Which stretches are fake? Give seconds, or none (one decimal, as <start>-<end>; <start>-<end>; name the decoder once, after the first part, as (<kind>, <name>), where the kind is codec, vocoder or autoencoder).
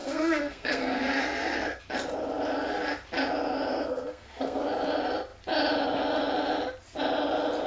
0.0-1.8 (codec, SNAC); 3.7-4.6